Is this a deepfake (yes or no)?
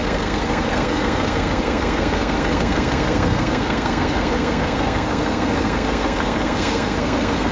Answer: yes